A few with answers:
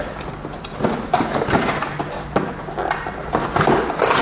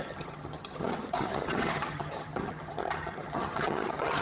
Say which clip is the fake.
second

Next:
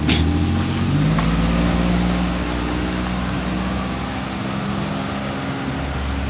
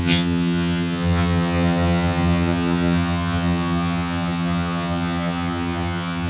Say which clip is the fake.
second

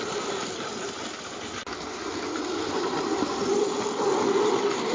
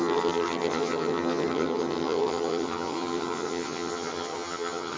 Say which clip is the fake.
second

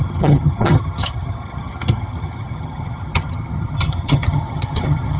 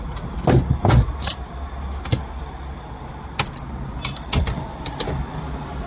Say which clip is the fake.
first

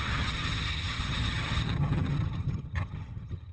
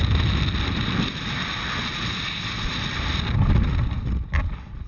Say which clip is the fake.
first